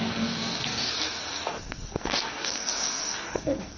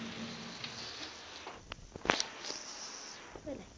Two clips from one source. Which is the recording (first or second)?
second